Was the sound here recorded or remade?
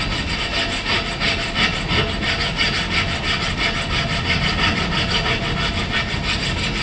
recorded